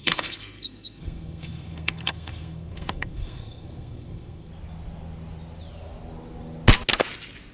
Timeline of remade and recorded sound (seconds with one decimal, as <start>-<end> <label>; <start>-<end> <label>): 0.0-4.5 remade; 4.5-7.5 recorded